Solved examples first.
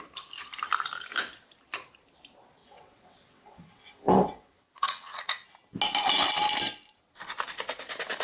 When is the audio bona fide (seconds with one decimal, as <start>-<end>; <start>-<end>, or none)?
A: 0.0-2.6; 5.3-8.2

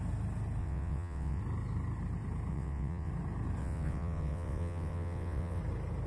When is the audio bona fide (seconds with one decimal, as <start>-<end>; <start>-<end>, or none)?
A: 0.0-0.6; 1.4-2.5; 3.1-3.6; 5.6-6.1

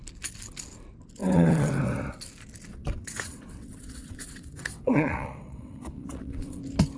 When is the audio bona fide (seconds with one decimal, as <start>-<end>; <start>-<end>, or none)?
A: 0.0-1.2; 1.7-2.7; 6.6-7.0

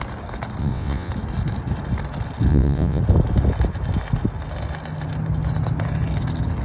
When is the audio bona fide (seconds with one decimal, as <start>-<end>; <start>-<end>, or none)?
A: 0.0-0.6; 1.1-2.5; 3.0-6.6